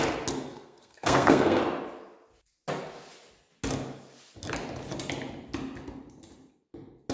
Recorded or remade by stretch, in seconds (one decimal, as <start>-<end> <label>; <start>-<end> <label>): 0.0-0.5 recorded; 0.5-1.6 remade; 1.6-7.1 recorded